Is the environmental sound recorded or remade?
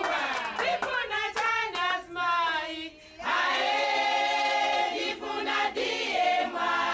recorded